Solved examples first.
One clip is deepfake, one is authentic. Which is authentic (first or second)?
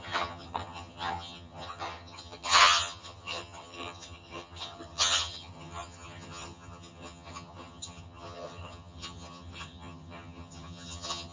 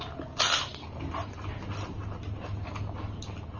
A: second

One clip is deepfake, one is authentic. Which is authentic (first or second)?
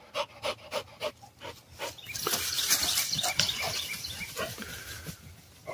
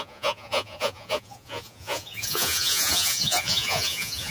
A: first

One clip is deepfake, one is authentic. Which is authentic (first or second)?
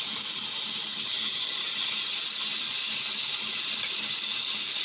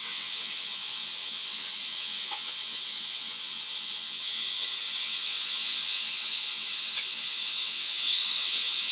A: first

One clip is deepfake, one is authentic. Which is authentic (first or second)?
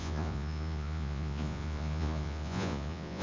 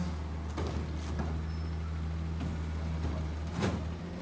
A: second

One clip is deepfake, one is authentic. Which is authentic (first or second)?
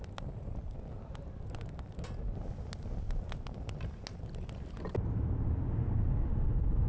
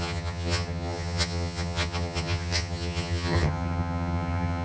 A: first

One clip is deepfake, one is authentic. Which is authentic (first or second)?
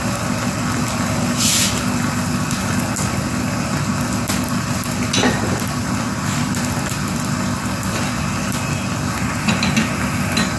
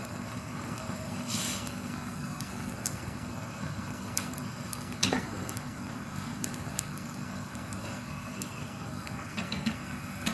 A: first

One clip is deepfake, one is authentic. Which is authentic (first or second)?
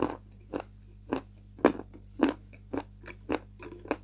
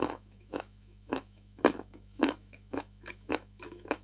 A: first